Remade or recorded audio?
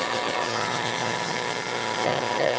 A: remade